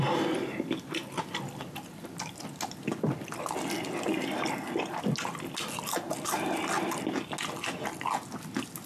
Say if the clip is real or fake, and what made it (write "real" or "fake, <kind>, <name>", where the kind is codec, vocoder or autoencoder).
real